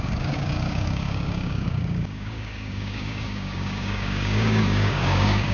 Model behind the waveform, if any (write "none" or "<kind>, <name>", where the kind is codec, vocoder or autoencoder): codec, DAC